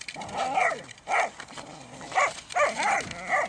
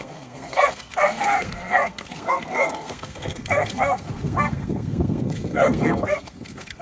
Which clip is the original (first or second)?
first